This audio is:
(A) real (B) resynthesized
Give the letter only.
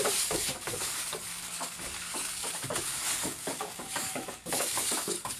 B